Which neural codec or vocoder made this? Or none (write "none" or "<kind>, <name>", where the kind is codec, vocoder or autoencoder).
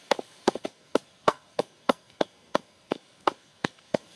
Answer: codec, SNAC